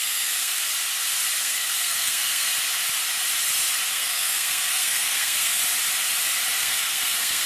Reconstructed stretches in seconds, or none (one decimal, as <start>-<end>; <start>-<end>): 0.0-0.7; 1.4-2.5; 3.9-5.6; 6.6-7.5